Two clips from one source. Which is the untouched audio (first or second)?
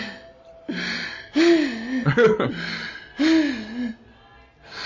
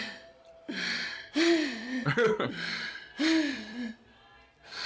first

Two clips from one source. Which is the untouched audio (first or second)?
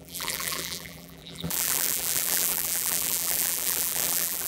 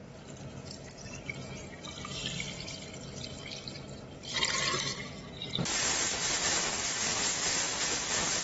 second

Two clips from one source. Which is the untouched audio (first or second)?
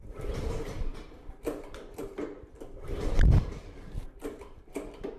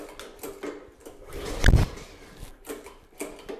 second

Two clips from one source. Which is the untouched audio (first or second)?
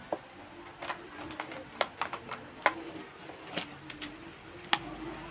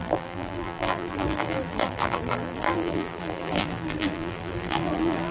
first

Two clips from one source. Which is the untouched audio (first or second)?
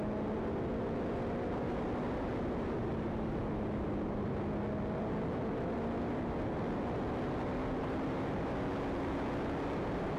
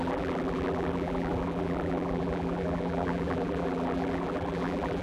first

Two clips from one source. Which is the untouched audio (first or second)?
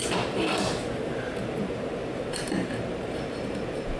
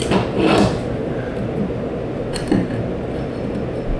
second